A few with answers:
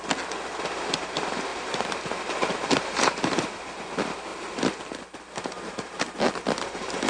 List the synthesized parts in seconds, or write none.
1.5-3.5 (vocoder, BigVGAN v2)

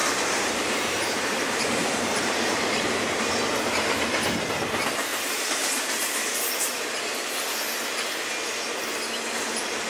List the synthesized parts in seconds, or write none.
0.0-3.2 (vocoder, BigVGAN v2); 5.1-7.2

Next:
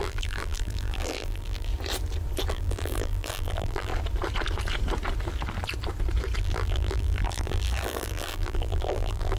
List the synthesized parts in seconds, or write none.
0.0-1.7 (vocoder, BigVGAN v2); 2.5-3.9; 6.4-9.4

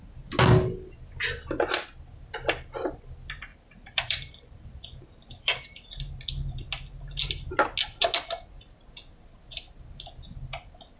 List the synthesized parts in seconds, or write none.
3.5-5.9 (vocoder, BigVGAN v2)